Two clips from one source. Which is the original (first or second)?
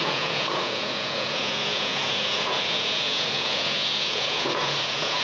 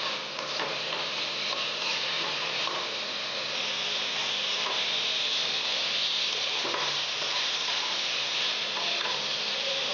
second